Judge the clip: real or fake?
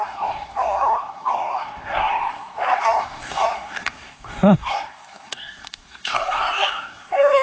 fake